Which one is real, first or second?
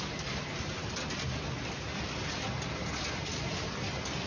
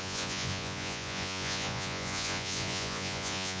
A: first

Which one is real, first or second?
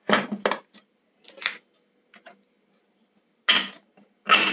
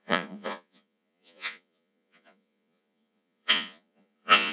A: first